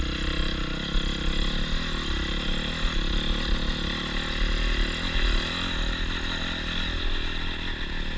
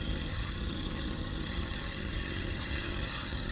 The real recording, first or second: first